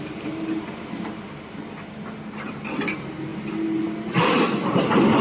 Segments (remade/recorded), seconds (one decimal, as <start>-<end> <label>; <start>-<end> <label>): 0.0-5.2 recorded

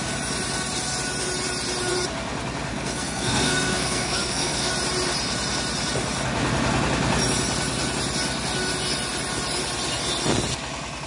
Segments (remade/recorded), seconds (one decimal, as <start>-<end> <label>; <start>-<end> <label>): 0.0-2.7 recorded; 2.7-4.7 remade; 4.7-11.1 recorded

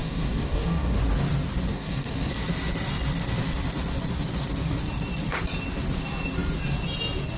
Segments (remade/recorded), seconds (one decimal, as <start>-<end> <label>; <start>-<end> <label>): 0.0-1.0 remade; 1.0-1.7 recorded; 1.7-2.3 remade; 2.3-7.4 recorded

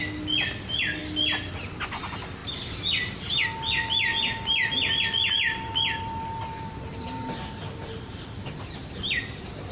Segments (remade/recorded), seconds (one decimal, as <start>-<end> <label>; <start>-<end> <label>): 0.0-9.7 recorded

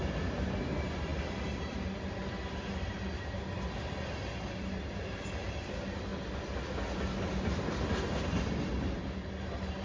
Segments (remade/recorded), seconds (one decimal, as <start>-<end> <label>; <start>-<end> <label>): 0.0-9.8 recorded

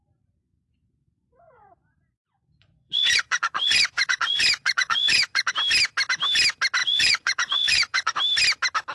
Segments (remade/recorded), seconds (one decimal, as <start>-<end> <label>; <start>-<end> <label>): 0.0-0.4 recorded; 0.4-5.5 remade; 5.5-6.8 recorded; 6.8-8.1 remade; 8.1-8.9 recorded

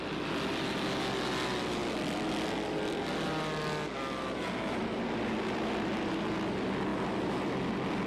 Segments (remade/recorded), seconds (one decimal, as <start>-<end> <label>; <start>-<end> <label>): 0.0-8.1 recorded